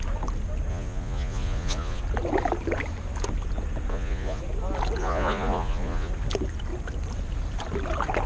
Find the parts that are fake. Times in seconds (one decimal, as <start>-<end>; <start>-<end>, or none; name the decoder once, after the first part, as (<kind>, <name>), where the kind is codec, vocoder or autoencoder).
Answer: 0.7-2.0 (vocoder, Vocos); 3.9-4.4; 5.0-6.1